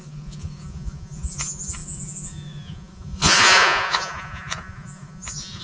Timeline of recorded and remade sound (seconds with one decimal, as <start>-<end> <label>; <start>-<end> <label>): 0.0-5.6 remade

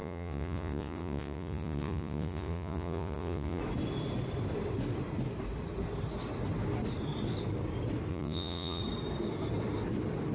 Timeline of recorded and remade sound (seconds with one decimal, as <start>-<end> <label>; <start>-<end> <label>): 0.0-3.6 remade; 3.6-8.1 recorded; 8.1-8.8 remade; 8.8-10.3 recorded

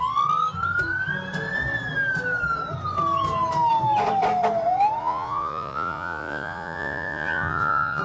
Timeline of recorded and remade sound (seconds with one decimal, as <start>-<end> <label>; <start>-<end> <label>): 0.0-5.0 recorded; 5.0-8.0 remade

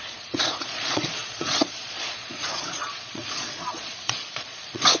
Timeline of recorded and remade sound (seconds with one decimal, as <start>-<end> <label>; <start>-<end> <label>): 0.0-5.0 remade

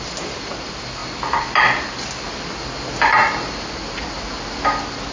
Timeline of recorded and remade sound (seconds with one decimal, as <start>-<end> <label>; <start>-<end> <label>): 0.0-5.1 recorded

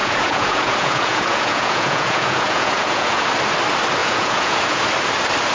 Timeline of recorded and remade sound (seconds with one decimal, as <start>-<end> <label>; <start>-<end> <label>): 0.0-3.2 remade; 3.2-4.0 recorded; 4.0-4.8 remade; 4.8-5.5 recorded

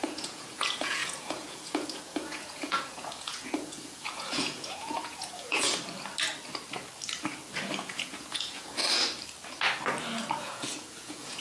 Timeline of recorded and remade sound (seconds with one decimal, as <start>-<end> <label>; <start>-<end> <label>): 0.0-5.7 remade; 5.7-7.9 recorded; 7.9-8.8 remade; 8.8-10.4 recorded; 10.4-11.4 remade

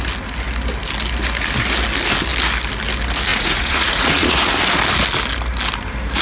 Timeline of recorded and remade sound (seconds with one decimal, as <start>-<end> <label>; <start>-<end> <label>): 0.0-3.3 recorded; 3.3-4.5 remade; 4.5-6.2 recorded